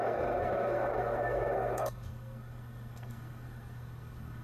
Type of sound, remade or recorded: remade